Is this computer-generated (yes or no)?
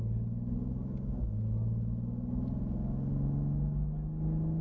no